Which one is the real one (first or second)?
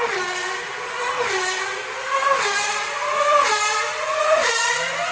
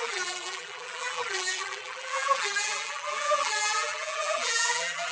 first